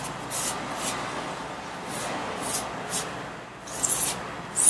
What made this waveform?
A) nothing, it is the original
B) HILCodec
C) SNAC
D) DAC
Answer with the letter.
A